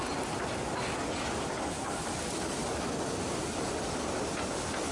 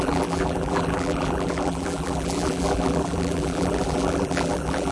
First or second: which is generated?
second